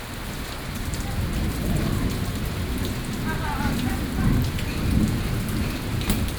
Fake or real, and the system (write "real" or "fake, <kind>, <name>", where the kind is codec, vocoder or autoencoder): real